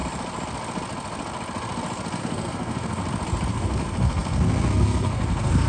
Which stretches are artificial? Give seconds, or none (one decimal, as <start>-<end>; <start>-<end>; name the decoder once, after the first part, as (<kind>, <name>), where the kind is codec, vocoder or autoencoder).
2.2-3.0 (codec, SNAC); 3.5-5.7